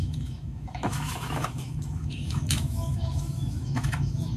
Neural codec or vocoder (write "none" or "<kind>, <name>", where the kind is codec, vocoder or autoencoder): autoencoder, DAC-VAE